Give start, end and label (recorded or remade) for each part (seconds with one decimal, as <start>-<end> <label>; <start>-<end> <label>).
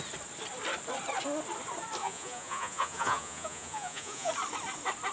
0.0-2.0 recorded; 2.0-4.3 remade; 4.3-5.1 recorded